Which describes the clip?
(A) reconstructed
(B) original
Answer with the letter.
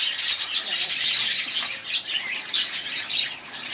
B